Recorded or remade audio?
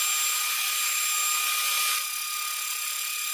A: recorded